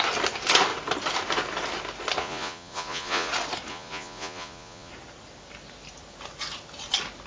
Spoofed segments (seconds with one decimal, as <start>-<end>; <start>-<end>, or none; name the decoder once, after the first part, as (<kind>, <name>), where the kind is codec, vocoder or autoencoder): 2.2-3.3 (vocoder, Vocos); 3.7-4.9